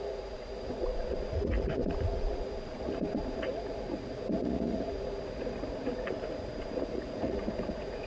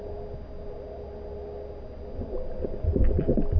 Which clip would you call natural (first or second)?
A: second